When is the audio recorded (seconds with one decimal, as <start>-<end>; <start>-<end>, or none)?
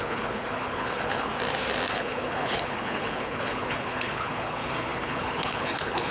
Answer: 1.3-1.9